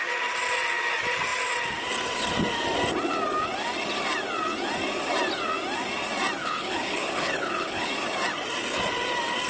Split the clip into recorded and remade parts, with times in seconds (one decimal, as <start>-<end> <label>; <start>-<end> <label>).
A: 0.0-6.4 recorded; 6.4-7.9 remade; 7.9-9.5 recorded